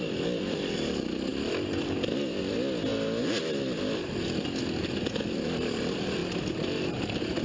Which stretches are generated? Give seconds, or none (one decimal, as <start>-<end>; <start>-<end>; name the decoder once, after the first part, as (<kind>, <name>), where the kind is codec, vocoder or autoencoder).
none